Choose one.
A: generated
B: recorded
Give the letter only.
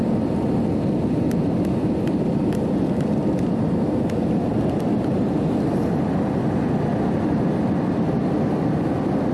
B